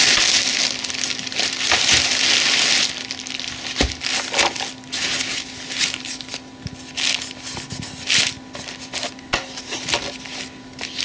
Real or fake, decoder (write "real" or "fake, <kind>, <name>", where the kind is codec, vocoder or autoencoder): real